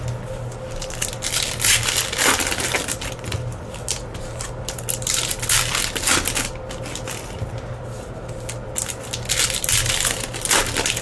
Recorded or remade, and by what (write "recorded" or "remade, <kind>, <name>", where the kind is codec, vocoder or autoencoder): recorded